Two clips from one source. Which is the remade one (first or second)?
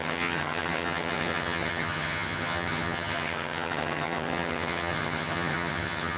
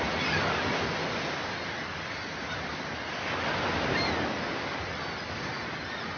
first